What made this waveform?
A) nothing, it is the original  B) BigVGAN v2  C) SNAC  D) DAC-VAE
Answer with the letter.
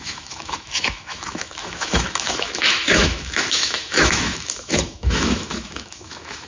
D